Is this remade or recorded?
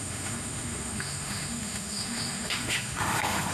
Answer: remade